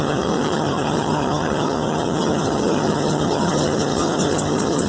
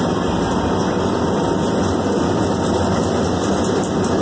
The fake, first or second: first